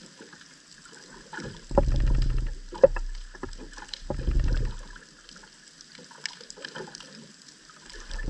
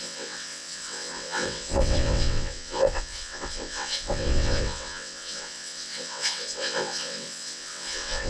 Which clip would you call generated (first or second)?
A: second